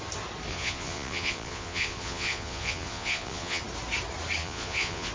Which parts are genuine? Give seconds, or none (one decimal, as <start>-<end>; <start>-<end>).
0.0-0.5; 3.6-4.4